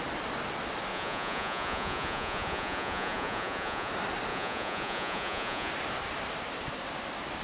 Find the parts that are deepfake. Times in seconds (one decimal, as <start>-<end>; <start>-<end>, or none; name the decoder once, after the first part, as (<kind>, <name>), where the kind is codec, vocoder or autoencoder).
0.9-3.9 (vocoder, Vocos); 4.3-5.7